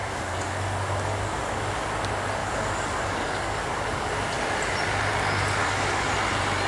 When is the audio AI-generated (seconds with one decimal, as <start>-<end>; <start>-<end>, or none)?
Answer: 0.0-1.9; 2.4-4.1; 5.6-6.1